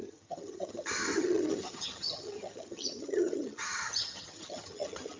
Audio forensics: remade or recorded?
remade